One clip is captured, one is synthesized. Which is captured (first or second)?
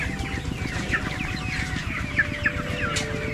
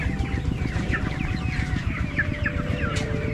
first